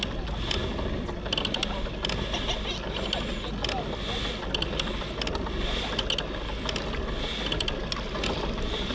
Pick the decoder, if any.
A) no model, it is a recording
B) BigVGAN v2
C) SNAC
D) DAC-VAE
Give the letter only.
A